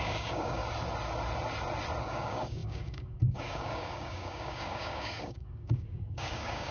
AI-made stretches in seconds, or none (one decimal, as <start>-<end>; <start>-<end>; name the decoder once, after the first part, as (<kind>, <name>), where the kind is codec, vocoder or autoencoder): 0.0-0.6 (codec, DAC); 2.0-6.7